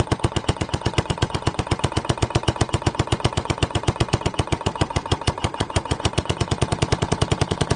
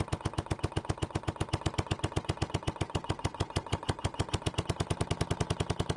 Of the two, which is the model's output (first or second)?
first